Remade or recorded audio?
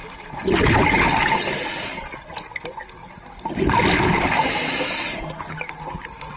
recorded